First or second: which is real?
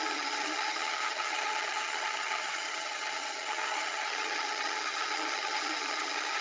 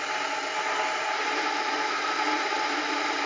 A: second